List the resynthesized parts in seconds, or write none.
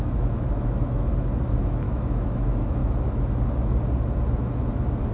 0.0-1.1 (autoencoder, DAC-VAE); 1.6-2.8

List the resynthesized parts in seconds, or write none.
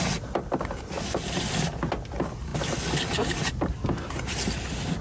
none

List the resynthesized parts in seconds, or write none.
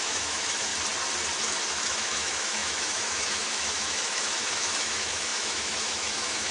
0.0-0.7 (autoencoder, DAC-VAE); 1.7-6.5